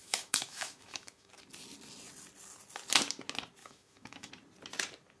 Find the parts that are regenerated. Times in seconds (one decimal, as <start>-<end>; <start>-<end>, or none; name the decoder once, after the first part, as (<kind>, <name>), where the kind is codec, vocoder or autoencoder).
0.0-1.3 (autoencoder, DAC-VAE); 3.6-4.3